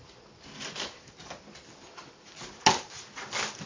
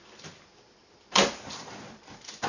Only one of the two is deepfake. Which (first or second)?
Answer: second